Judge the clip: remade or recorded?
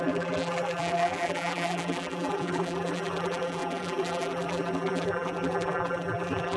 remade